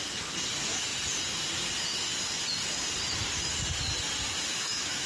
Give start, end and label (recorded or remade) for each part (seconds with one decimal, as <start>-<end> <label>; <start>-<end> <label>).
0.0-4.5 recorded; 4.5-5.1 remade